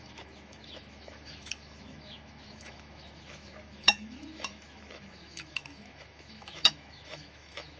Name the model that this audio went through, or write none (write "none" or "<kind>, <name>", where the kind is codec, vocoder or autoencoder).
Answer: autoencoder, DAC-VAE